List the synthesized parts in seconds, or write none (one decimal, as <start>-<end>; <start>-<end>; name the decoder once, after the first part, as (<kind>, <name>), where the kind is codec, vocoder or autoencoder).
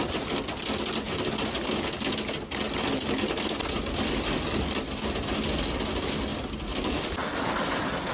none